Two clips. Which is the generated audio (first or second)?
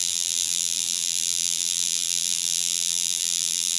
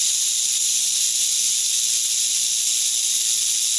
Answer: first